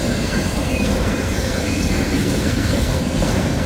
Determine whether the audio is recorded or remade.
remade